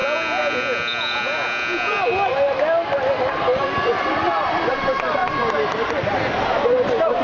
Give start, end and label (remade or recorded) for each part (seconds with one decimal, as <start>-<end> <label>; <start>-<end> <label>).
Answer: 0.0-2.6 recorded; 2.6-5.2 remade; 5.2-7.2 recorded